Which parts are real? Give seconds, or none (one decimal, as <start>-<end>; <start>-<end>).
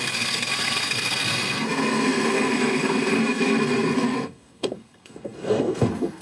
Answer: none